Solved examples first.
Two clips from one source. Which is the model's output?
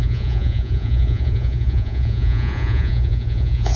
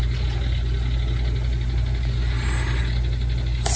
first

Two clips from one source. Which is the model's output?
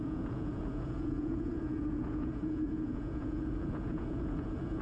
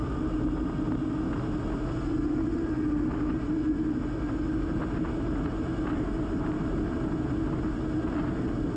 first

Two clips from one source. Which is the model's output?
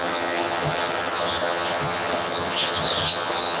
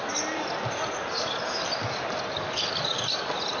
first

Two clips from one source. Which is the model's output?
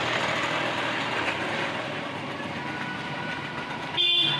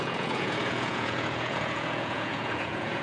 second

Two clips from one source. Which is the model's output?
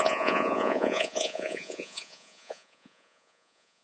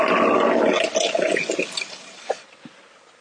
first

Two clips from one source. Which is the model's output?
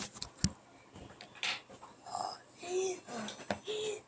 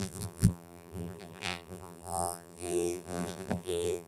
second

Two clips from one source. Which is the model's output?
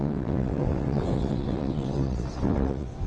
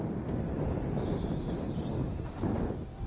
first